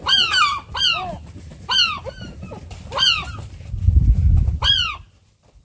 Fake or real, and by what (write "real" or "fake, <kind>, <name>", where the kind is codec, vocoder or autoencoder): real